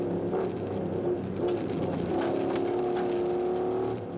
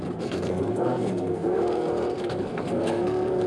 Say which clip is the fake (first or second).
second